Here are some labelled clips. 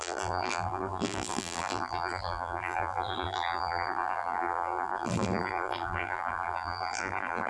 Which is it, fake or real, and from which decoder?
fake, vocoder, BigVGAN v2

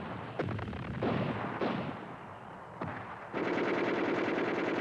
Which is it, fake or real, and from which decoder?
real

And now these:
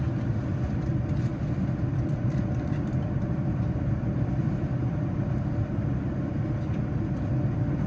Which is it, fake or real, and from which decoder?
fake, vocoder, BigVGAN v2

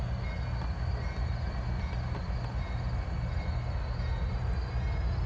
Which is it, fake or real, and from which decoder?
real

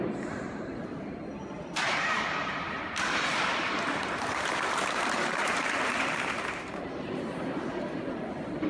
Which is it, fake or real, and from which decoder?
fake, vocoder, BigVGAN v2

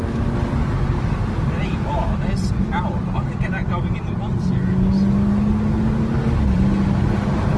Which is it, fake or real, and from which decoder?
real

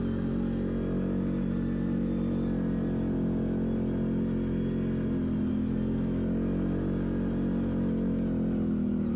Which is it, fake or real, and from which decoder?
real